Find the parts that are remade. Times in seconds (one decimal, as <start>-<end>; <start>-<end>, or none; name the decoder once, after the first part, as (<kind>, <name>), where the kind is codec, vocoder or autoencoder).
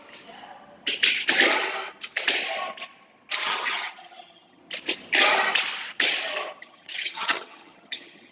3.4-4.6 (vocoder, HiFi-GAN); 6.6-8.3